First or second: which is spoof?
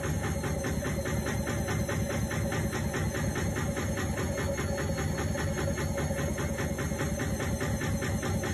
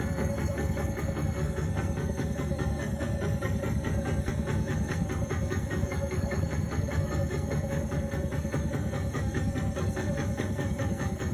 second